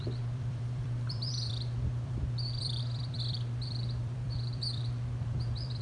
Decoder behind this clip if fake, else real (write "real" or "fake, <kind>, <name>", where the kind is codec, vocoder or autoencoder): fake, vocoder, BigVGAN v2